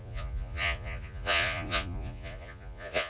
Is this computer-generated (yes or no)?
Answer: yes